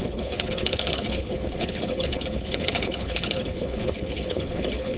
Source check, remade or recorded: remade